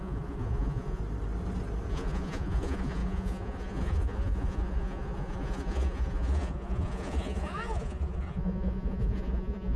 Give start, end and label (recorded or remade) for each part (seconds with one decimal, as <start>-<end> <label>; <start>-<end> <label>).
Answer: 0.0-1.0 remade; 1.0-1.9 recorded; 1.9-9.8 remade